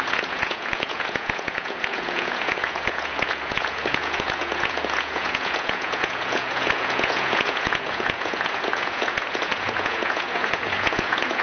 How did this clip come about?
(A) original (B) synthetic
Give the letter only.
B